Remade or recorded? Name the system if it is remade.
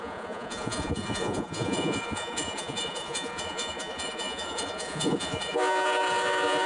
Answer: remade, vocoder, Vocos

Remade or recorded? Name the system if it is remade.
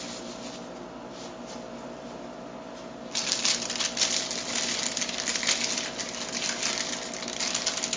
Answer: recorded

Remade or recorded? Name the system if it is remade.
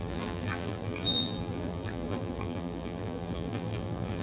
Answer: remade, vocoder, BigVGAN v2